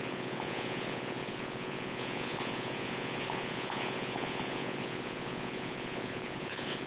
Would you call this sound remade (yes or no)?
yes